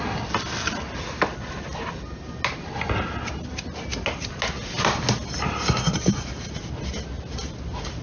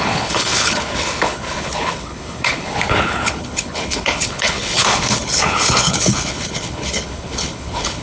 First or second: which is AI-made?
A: second